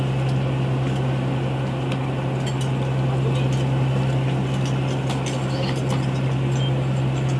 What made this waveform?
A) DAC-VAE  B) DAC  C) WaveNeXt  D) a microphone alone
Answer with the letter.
D